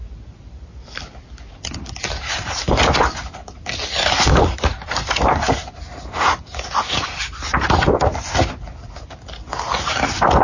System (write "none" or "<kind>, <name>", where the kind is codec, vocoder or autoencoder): none